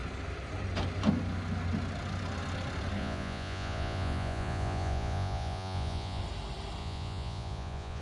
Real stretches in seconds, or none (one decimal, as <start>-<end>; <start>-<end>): 0.0-3.0; 6.2-6.8